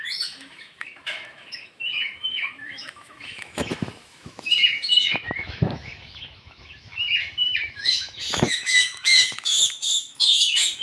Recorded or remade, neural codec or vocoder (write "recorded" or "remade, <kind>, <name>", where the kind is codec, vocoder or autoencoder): remade, autoencoder, DAC-VAE